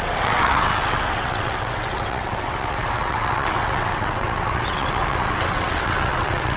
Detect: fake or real fake